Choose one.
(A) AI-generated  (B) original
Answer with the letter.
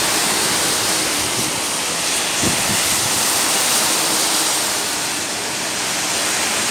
A